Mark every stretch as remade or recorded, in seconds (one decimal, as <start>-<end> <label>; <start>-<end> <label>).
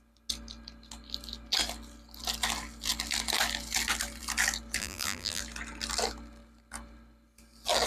0.0-4.8 recorded; 4.8-5.4 remade; 5.4-7.9 recorded